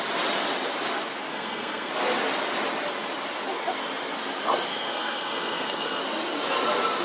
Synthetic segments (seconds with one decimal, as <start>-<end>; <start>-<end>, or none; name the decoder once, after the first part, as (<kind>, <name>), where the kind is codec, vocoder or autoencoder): 1.3-1.9 (codec, SNAC); 4.7-6.0